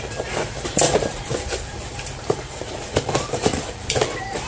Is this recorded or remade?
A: remade